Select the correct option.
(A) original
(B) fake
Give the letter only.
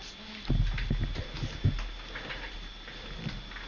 A